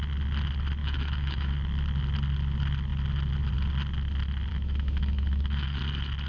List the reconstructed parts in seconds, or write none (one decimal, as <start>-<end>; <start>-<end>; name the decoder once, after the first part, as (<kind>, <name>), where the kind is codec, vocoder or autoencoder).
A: 0.8-1.5 (autoencoder, DAC-VAE); 4.5-5.8